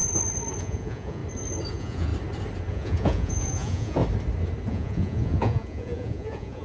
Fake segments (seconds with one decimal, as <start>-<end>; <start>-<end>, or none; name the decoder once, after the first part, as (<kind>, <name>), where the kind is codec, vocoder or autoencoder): 0.6-1.2 (vocoder, Vocos); 1.7-2.1; 2.7-4.0; 4.7-6.6